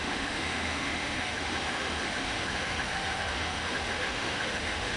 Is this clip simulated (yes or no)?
yes